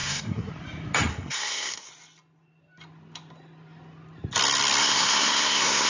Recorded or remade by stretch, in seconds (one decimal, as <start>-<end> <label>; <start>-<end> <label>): 0.0-0.5 remade; 0.5-1.1 recorded; 1.1-1.9 remade; 1.9-4.8 recorded; 4.8-5.9 remade

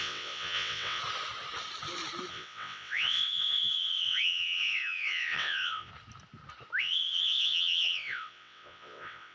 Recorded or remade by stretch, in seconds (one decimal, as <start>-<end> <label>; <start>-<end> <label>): 0.0-1.0 remade; 1.0-2.3 recorded; 2.3-5.9 remade; 5.9-6.8 recorded; 6.8-9.3 remade

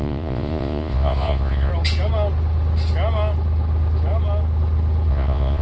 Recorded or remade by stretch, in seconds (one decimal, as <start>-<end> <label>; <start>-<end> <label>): 0.0-1.7 remade; 1.7-5.1 recorded; 5.1-5.6 remade

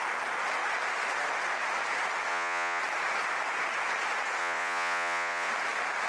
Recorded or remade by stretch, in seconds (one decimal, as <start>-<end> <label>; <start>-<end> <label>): 0.0-2.3 recorded; 2.3-2.8 remade; 2.8-4.4 recorded; 4.4-5.5 remade; 5.5-6.1 recorded